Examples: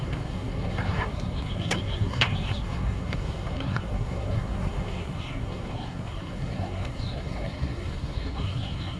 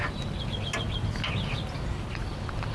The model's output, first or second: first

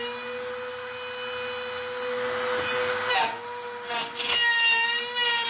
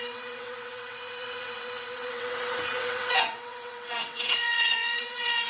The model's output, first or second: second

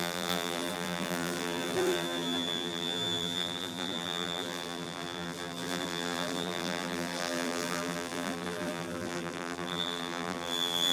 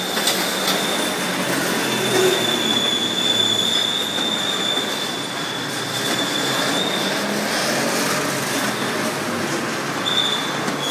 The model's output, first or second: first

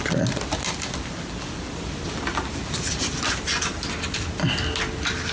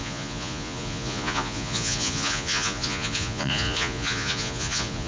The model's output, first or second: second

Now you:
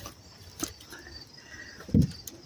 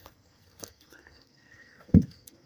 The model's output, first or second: second